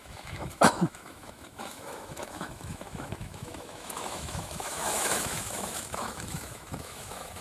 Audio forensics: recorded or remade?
remade